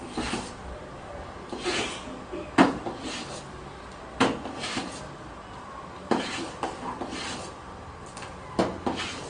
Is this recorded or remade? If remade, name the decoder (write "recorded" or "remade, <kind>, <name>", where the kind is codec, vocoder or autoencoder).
recorded